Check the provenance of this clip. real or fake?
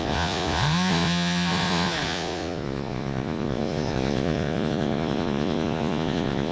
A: fake